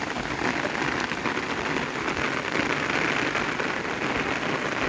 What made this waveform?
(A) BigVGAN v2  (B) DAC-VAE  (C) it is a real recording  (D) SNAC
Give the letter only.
C